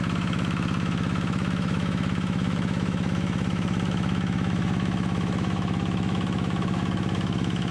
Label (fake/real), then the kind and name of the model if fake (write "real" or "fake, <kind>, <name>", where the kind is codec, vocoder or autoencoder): fake, autoencoder, DAC-VAE